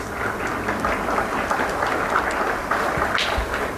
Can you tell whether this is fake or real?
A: real